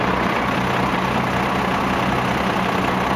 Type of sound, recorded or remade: recorded